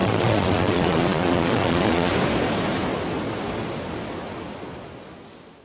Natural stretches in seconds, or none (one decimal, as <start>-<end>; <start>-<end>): 2.1-5.6